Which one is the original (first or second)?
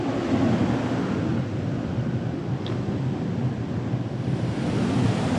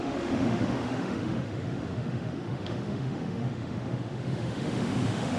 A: first